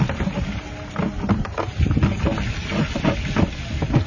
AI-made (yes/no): no